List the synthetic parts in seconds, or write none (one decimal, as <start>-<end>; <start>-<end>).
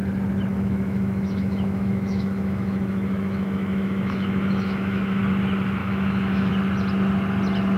0.5-5.2; 5.8-6.5